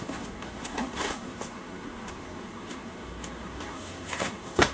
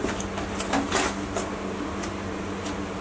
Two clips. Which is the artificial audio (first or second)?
first